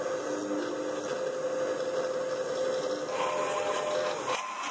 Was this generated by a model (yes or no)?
no